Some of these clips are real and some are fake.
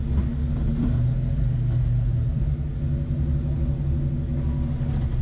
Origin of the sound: real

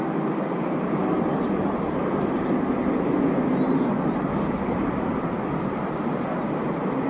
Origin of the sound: real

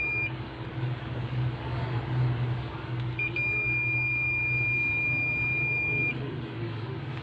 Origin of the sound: fake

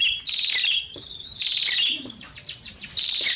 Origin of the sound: fake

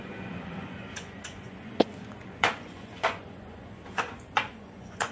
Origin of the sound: fake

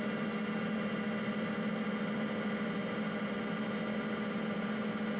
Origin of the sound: real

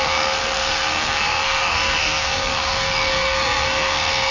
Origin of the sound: fake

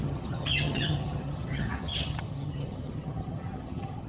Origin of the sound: fake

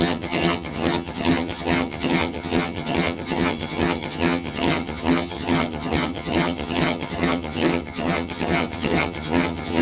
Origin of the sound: fake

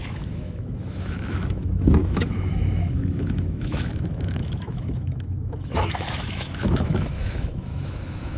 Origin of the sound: fake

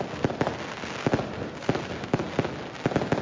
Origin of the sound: real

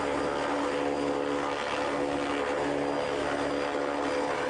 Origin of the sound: real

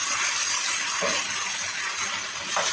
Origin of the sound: real